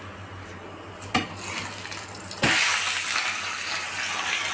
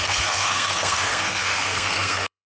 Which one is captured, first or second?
first